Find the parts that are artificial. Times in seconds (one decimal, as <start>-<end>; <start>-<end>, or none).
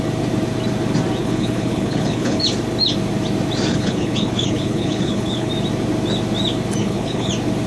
1.2-2.4; 3.7-5.5; 6.8-7.3